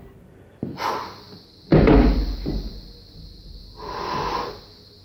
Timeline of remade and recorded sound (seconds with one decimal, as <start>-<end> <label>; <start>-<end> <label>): 0.0-5.0 recorded